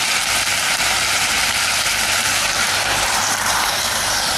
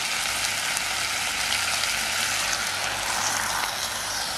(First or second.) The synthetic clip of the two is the first